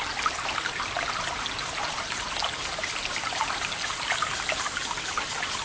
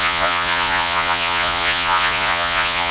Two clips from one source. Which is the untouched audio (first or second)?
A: first